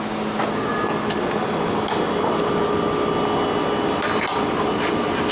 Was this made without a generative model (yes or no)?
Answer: yes